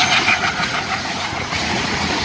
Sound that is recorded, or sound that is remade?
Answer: remade